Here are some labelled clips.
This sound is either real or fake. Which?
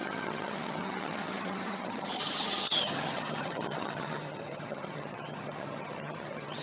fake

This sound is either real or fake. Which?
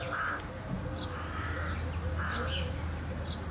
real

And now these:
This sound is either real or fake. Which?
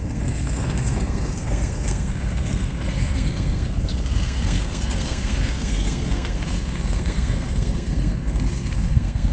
fake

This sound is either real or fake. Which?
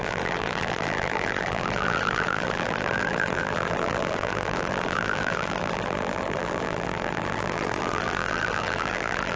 fake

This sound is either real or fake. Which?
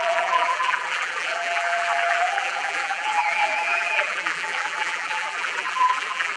fake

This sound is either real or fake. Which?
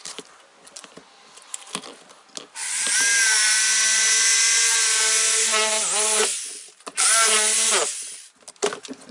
real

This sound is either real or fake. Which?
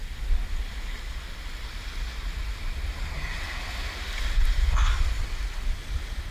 real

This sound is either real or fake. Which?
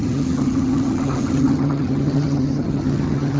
fake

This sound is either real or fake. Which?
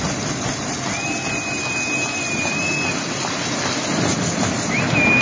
real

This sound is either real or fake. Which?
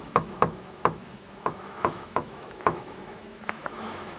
fake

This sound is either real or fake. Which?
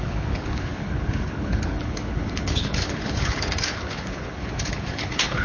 fake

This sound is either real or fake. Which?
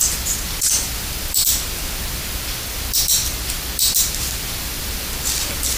fake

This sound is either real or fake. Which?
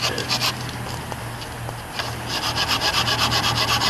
real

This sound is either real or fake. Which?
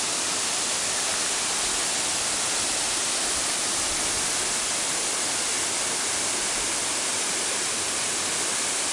real